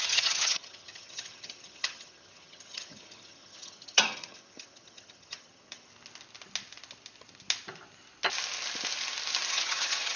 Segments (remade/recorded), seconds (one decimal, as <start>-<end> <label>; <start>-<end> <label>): 0.0-5.9 remade; 5.9-9.5 recorded; 9.5-10.2 remade